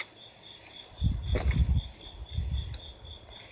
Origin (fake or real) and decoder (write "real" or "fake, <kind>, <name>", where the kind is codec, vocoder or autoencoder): real